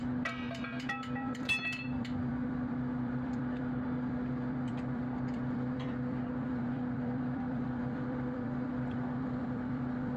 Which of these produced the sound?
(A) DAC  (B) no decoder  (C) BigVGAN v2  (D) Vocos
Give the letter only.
C